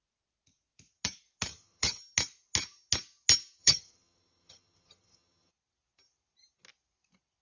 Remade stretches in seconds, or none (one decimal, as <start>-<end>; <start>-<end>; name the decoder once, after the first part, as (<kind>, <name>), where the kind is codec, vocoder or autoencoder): 1.5-2.0 (vocoder, HiFi-GAN); 3.6-5.5